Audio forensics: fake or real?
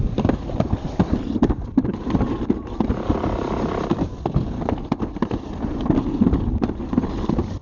real